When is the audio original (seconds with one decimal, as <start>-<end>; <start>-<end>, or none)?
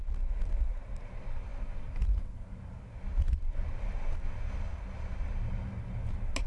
0.0-6.5